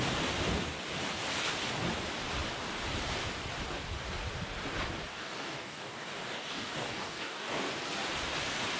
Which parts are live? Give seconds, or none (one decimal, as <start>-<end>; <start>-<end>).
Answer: 0.0-5.1; 7.7-8.8